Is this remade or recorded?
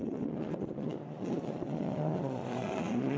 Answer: remade